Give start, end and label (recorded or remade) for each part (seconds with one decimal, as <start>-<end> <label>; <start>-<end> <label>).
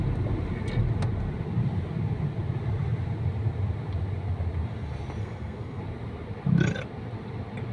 0.0-5.2 recorded; 5.2-5.8 remade; 5.8-7.7 recorded